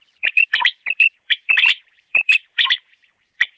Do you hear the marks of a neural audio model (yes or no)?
yes